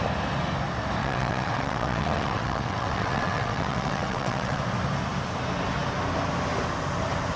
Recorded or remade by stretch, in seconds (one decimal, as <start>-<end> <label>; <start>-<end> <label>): 0.0-1.0 recorded; 1.0-4.6 remade; 4.6-7.4 recorded

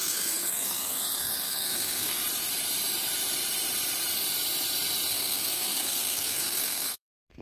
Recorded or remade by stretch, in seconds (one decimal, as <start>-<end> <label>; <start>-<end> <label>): 0.0-2.2 remade; 2.2-5.1 recorded; 5.1-7.4 remade

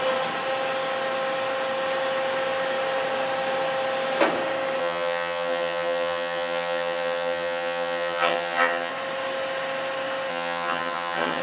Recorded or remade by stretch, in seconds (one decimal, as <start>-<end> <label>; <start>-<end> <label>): 0.0-4.8 recorded; 4.8-8.9 remade; 8.9-10.3 recorded; 10.3-11.4 remade

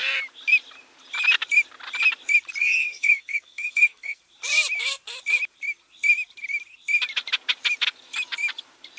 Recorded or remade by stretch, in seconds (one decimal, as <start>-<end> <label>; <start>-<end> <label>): 0.0-2.6 recorded; 2.6-4.2 remade; 4.2-9.0 recorded

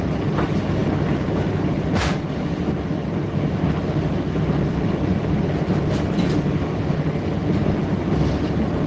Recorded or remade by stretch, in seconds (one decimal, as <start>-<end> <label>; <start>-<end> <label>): 0.0-8.9 recorded

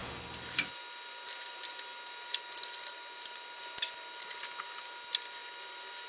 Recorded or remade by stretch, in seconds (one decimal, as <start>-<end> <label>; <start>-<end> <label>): 0.0-6.1 recorded

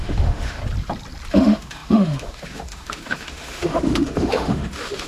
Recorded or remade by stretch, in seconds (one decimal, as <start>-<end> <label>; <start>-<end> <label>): 0.0-0.6 remade; 0.6-1.3 recorded; 1.3-5.1 remade

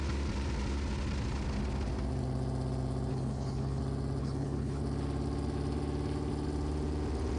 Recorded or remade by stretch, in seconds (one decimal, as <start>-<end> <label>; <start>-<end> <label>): 0.0-3.1 recorded; 3.1-3.8 remade; 3.8-4.2 recorded; 4.2-4.8 remade; 4.8-7.4 recorded